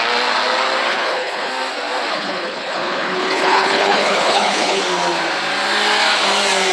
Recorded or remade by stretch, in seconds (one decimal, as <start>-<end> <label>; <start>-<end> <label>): 0.0-0.9 recorded; 0.9-1.5 remade; 1.5-2.1 recorded; 2.1-4.8 remade; 4.8-6.7 recorded